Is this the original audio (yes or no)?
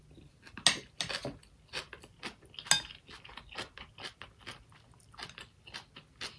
yes